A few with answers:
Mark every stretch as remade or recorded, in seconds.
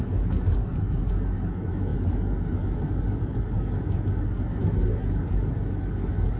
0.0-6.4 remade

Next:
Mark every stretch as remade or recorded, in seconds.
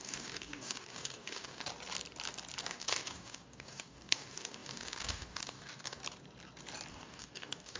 0.0-1.7 remade; 1.7-2.6 recorded; 2.6-6.0 remade; 6.0-6.9 recorded; 6.9-7.8 remade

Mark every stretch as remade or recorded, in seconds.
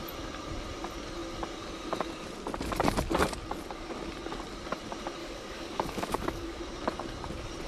0.0-5.2 recorded; 5.2-6.6 remade; 6.6-7.7 recorded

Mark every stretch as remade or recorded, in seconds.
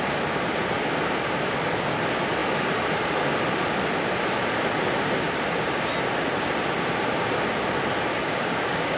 0.0-8.1 recorded; 8.1-9.0 remade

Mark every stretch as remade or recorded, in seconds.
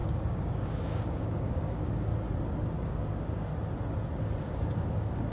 0.0-2.1 remade; 2.1-2.7 recorded; 2.7-3.5 remade; 3.5-4.4 recorded; 4.4-5.3 remade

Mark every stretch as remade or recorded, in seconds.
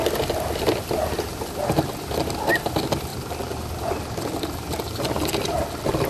0.0-6.1 recorded